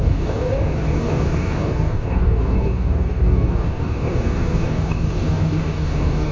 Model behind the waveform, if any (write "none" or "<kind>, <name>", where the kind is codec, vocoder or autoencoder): codec, DAC